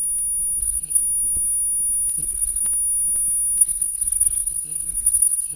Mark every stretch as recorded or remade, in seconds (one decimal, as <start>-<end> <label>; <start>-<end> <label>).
0.0-0.6 recorded; 0.6-1.0 remade; 1.0-2.1 recorded; 2.1-2.6 remade; 2.6-3.6 recorded; 3.6-5.6 remade